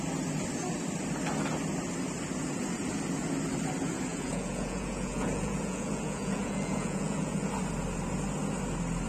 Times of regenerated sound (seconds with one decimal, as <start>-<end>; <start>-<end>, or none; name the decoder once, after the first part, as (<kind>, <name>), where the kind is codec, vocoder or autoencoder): 4.1-7.5 (vocoder, Vocos)